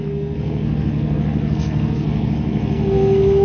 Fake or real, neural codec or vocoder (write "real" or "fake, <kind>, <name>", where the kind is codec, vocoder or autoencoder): fake, codec, SNAC